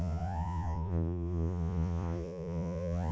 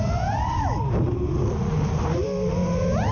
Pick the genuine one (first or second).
second